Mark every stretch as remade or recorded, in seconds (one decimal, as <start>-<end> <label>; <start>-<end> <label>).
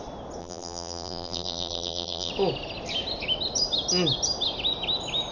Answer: 0.0-0.4 recorded; 0.4-2.3 remade; 2.3-5.3 recorded